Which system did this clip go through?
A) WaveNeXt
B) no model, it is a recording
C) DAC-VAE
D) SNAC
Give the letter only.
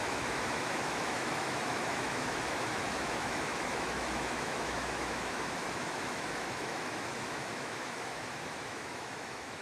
C